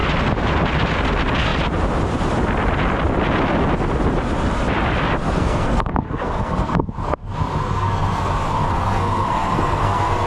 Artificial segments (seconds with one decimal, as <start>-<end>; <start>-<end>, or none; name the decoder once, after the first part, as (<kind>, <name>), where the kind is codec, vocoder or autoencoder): 5.2-10.3 (codec, SNAC)

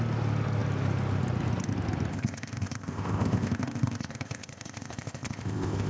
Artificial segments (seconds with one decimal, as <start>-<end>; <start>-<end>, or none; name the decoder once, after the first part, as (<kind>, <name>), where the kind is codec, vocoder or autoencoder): 2.1-5.9 (codec, ZipCodec)

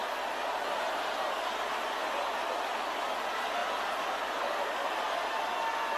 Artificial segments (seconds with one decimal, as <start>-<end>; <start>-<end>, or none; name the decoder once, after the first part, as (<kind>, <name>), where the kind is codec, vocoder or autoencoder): none

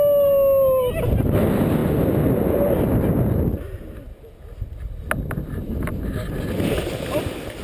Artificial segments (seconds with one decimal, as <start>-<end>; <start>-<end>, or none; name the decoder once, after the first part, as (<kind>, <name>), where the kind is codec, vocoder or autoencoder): none